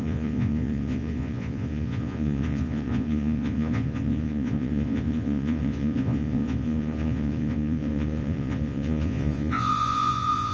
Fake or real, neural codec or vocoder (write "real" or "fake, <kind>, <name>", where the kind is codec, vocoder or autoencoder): fake, vocoder, Vocos